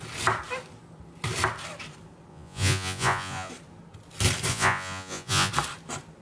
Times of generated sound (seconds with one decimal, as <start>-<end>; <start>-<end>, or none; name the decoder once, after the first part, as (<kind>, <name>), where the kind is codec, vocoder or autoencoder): 2.3-3.5 (vocoder, Vocos); 4.5-5.5